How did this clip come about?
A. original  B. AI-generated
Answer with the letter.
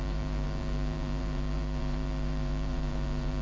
B